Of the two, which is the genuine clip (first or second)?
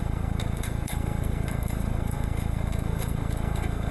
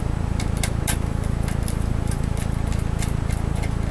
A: second